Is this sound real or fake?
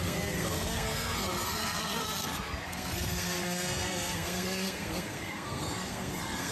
fake